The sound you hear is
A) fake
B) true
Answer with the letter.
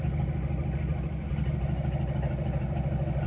B